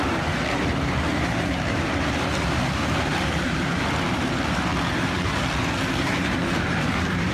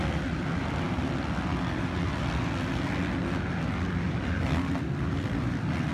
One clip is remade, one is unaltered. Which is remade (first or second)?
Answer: first